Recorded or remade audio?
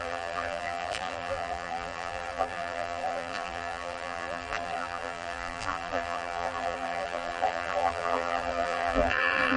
remade